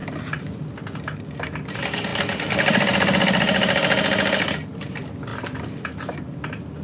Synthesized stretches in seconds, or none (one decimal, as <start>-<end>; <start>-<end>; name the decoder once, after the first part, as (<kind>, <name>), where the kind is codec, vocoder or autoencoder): none